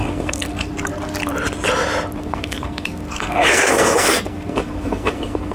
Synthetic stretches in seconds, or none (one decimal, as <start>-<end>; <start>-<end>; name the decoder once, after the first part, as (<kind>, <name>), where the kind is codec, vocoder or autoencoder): 0.0-0.7 (codec, SNAC); 2.2-5.5